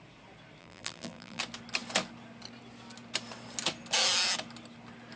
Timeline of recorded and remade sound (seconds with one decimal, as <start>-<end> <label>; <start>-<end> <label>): 0.0-0.6 recorded; 0.6-1.4 remade; 1.4-5.2 recorded